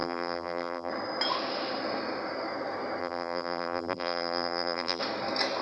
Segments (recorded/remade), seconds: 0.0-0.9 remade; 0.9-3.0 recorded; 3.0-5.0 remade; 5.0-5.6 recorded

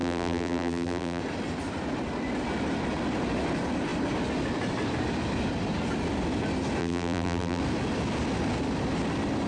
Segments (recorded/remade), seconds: 0.0-1.2 remade; 1.2-6.8 recorded; 6.8-7.6 remade; 7.6-9.5 recorded

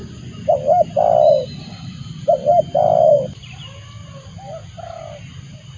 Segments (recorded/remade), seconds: 0.0-4.6 recorded; 4.6-5.2 remade; 5.2-5.8 recorded

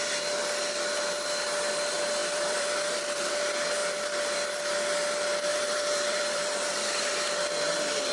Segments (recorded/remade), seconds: 0.0-2.2 recorded; 2.2-3.3 remade; 3.3-5.5 recorded; 5.5-7.1 remade; 7.1-8.1 recorded

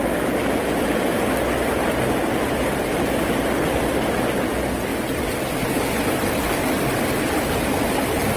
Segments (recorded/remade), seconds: 0.0-2.7 recorded; 2.7-3.3 remade; 3.3-8.4 recorded